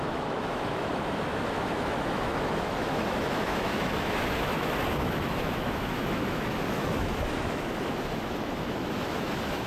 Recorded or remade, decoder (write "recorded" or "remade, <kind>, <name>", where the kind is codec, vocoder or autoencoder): remade, autoencoder, DAC-VAE